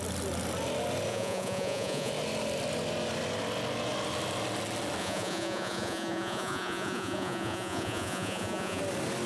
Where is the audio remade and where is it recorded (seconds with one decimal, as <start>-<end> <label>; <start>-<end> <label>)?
0.0-1.1 recorded; 1.1-2.1 remade; 2.1-5.0 recorded; 5.0-8.8 remade; 8.8-9.3 recorded